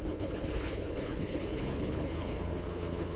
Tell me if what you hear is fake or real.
fake